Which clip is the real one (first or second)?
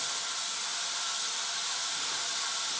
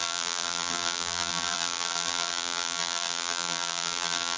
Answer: first